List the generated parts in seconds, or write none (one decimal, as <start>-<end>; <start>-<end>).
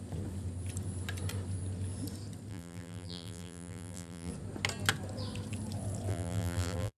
2.5-4.3; 6.1-7.0